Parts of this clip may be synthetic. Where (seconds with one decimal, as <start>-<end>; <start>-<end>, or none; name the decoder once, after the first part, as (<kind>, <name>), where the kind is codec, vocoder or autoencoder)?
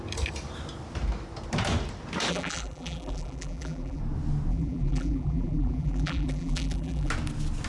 2.3-4.0 (vocoder, BigVGAN v2); 4.5-7.1